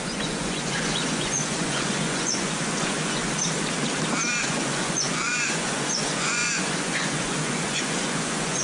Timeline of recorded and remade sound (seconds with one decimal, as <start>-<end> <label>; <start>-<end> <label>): 0.0-3.2 remade; 3.2-4.4 recorded; 4.4-8.6 remade